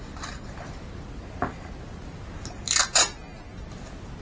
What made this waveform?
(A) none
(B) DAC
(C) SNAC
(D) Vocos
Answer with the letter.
A